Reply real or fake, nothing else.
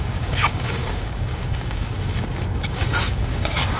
fake